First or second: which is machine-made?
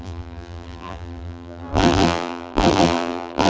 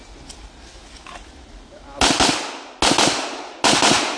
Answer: first